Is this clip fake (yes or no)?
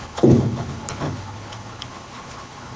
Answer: yes